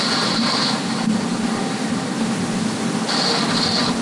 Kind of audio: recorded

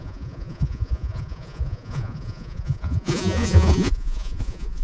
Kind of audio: remade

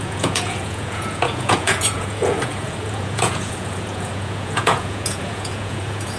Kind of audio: remade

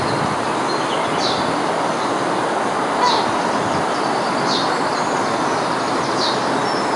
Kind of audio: recorded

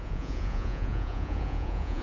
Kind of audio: remade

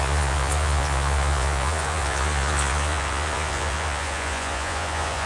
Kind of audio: remade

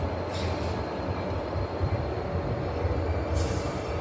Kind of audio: recorded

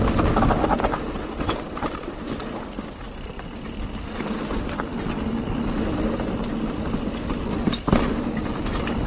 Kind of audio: recorded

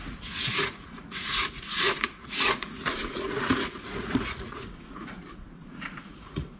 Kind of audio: remade